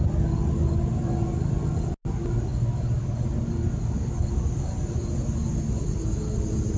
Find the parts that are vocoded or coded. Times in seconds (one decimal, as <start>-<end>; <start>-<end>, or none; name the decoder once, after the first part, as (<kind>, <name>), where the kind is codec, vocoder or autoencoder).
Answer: none